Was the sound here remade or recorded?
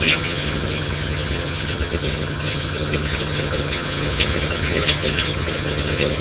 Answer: remade